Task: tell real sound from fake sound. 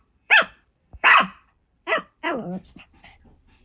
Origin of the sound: fake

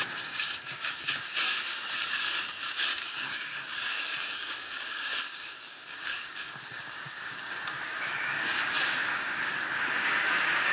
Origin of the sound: fake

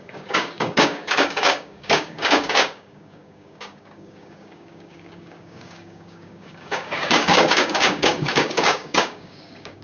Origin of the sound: fake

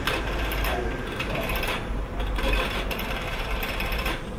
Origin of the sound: fake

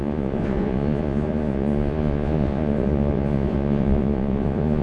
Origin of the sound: fake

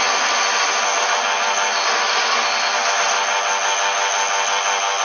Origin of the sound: real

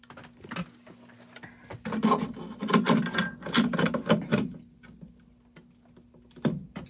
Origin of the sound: real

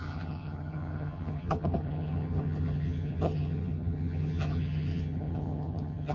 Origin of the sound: fake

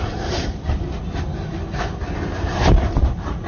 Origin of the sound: real